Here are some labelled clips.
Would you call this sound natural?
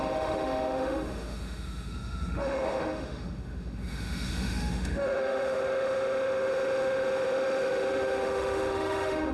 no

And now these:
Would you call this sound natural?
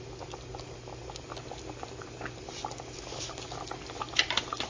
yes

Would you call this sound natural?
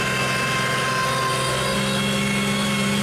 yes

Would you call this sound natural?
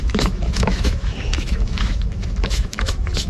no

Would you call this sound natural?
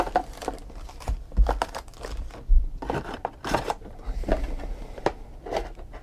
yes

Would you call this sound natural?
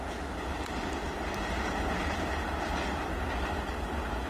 yes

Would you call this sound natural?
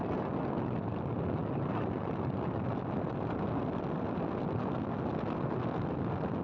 yes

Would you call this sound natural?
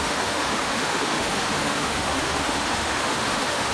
no